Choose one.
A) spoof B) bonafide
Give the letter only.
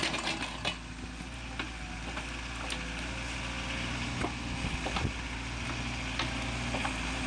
B